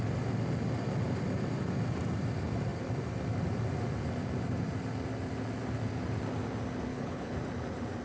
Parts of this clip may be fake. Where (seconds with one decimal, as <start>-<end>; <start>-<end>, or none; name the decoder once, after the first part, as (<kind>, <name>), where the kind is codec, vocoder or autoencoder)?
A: 6.9-7.4 (codec, HILCodec)